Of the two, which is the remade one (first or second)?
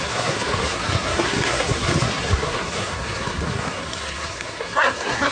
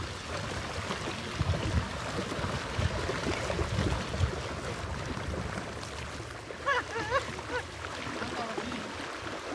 first